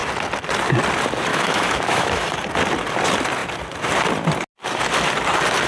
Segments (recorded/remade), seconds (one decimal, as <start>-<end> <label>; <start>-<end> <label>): 0.0-1.3 recorded; 1.3-2.3 remade; 2.3-5.7 recorded